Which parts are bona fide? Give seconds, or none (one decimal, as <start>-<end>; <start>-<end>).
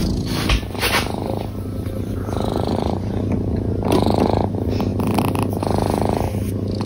3.2-6.9